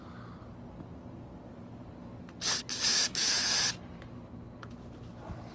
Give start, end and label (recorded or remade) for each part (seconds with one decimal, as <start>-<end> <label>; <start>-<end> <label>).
0.0-2.9 recorded; 2.9-3.5 remade; 3.5-5.5 recorded

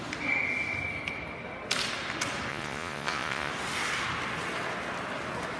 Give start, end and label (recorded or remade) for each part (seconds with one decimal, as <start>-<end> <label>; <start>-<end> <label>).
0.0-2.5 recorded; 2.5-3.5 remade; 3.5-5.6 recorded